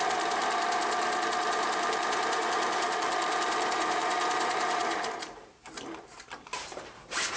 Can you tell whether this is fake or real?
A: fake